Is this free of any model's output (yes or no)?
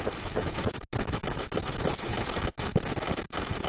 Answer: yes